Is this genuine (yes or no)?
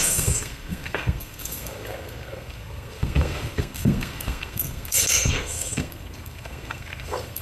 no